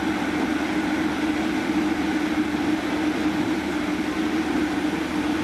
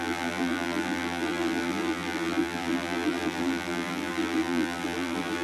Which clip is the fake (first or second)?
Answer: second